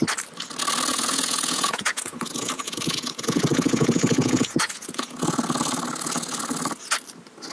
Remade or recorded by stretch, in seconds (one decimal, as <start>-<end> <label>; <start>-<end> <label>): 0.0-0.9 recorded; 0.9-5.4 remade; 5.4-7.5 recorded